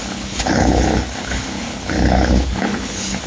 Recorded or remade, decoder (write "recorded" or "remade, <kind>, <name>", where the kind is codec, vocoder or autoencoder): remade, codec, HILCodec